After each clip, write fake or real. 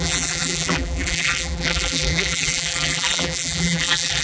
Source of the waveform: fake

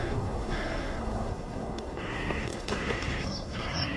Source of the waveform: fake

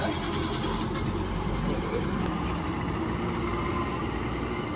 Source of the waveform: real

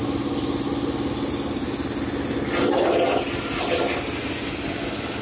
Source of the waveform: real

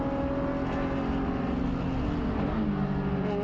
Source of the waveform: real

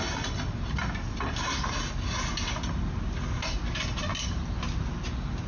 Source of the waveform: real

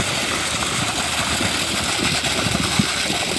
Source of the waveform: real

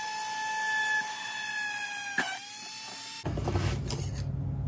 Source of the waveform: real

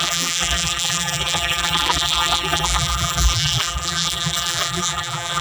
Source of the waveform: fake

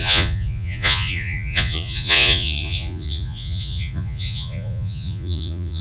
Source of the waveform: fake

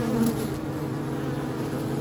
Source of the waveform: real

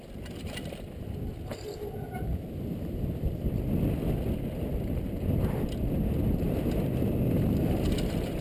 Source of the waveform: real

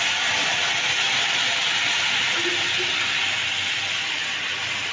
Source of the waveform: real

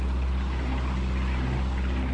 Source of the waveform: real